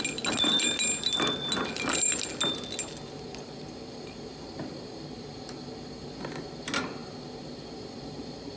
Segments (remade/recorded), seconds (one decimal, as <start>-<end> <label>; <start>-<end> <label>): 0.0-8.6 recorded